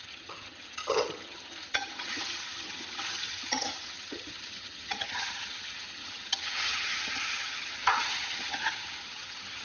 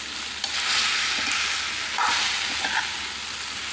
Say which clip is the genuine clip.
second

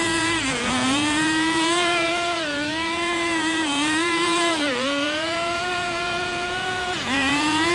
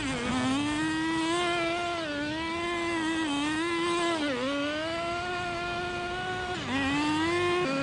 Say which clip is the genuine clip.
second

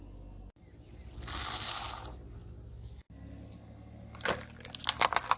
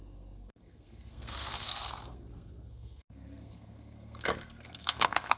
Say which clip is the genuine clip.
first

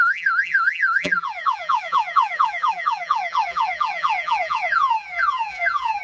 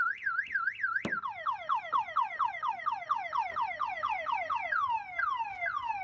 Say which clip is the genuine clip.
second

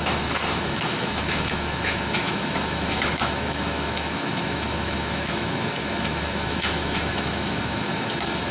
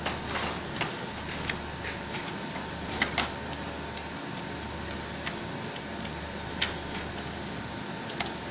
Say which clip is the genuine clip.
second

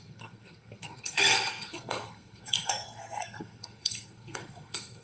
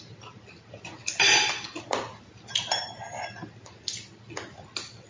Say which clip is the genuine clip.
second